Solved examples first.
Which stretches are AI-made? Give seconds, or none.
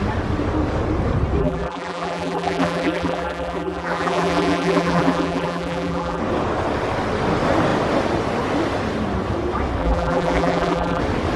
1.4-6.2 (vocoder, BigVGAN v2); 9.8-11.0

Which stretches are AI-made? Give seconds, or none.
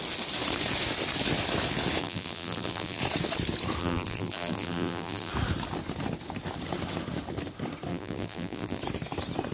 2.0-3.0 (vocoder, BigVGAN v2); 3.8-5.3; 7.9-8.8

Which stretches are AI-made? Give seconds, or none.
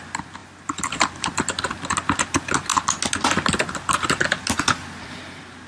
0.4-1.6 (vocoder, BigVGAN v2)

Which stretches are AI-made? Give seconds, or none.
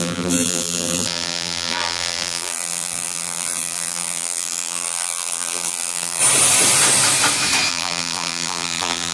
0.0-6.2 (vocoder, BigVGAN v2); 7.7-9.1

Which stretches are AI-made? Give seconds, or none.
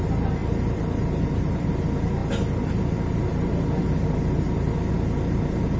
0.0-2.2 (vocoder, BigVGAN v2)